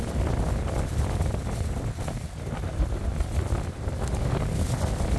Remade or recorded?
recorded